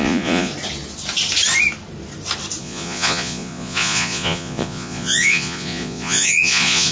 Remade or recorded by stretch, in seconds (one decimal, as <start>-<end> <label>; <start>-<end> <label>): 0.0-0.5 remade; 0.5-2.6 recorded; 2.6-6.9 remade